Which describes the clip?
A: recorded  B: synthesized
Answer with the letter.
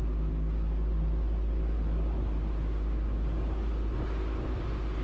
A